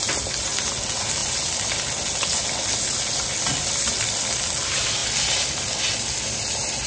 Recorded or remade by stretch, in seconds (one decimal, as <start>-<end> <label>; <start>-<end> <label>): 0.0-6.9 recorded